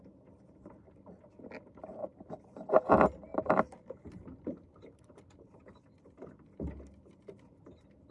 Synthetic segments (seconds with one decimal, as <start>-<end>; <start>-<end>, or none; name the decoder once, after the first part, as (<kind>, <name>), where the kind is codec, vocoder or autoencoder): none